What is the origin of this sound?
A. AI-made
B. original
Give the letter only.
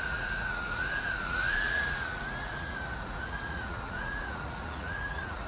A